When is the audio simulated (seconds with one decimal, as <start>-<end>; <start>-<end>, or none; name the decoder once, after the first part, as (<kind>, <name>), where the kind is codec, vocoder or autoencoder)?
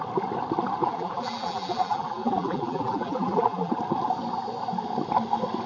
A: 0.8-3.7 (vocoder, BigVGAN v2)